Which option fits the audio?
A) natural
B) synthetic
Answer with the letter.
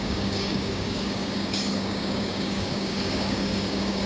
B